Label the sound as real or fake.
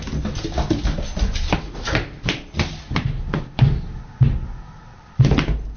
real